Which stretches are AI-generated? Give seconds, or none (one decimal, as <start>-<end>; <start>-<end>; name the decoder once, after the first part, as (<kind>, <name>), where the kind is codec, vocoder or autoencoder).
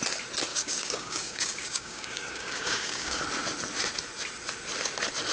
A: 0.5-3.2 (codec, DAC)